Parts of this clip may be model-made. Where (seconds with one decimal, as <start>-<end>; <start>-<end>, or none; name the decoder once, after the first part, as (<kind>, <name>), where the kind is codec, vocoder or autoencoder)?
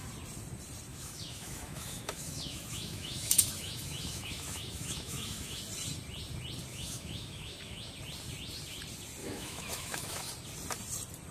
0.9-5.6 (autoencoder, DAC-VAE); 6.7-7.9; 9.2-10.3